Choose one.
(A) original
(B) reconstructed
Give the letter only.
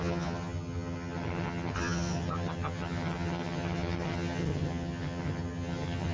B